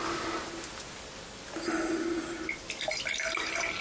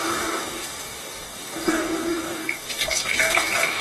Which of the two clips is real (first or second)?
first